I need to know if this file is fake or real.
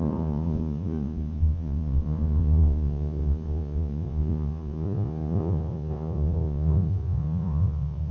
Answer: fake